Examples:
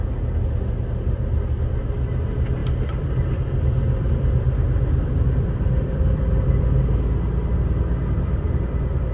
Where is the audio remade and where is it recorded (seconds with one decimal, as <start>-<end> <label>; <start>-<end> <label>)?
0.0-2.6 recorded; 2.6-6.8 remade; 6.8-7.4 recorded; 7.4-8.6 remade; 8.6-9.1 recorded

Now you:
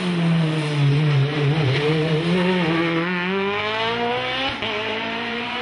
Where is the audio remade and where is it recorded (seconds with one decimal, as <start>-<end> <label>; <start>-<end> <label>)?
0.0-1.3 recorded; 1.3-1.9 remade; 1.9-4.8 recorded; 4.8-5.6 remade

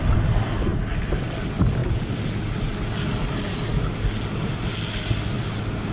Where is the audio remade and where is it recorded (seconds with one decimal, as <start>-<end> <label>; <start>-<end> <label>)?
0.0-5.9 recorded

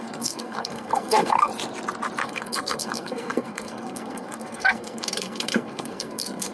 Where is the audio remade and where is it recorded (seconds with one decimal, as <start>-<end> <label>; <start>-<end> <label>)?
0.0-1.5 remade; 1.5-2.2 recorded; 2.2-6.5 remade

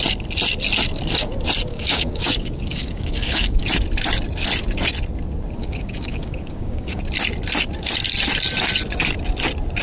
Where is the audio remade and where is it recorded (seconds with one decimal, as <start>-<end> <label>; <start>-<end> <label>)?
0.0-1.7 recorded; 1.7-3.7 remade; 3.7-5.6 recorded; 5.6-7.0 remade; 7.0-9.8 recorded